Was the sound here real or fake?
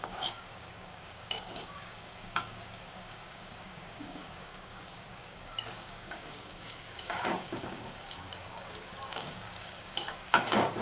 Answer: fake